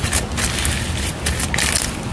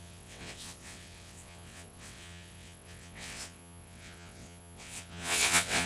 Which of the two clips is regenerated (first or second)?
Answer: second